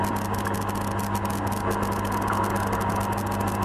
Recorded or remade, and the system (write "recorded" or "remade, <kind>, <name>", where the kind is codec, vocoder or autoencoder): recorded